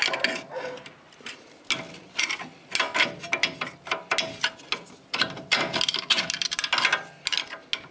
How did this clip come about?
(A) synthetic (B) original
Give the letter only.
B